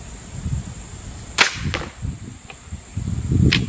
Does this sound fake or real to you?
real